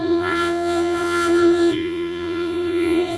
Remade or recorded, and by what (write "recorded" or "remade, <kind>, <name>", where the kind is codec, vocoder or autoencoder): remade, vocoder, Vocos